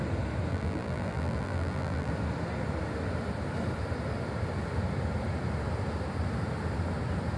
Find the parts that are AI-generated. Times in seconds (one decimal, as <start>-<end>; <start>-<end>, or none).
0.5-2.1